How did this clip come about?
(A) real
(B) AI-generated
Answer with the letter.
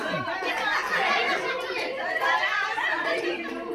A